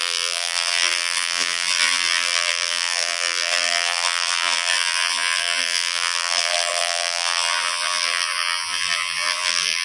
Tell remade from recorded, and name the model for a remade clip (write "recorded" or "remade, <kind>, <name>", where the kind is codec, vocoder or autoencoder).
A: remade, vocoder, BigVGAN v2